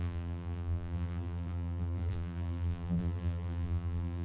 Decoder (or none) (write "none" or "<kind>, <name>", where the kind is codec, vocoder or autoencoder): vocoder, BigVGAN v2